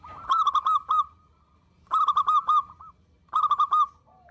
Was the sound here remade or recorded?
recorded